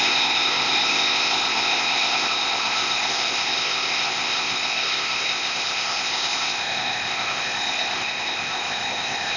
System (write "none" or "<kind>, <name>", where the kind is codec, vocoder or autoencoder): codec, ZipCodec